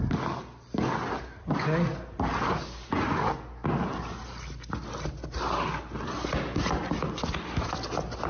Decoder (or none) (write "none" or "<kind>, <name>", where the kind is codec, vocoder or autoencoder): none